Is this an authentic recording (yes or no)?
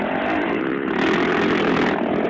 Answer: yes